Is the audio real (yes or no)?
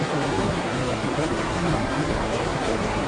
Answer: no